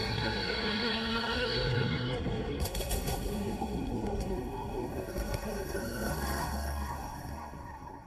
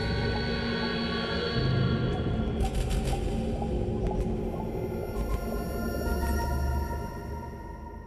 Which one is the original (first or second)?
second